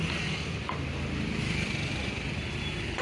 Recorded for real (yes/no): yes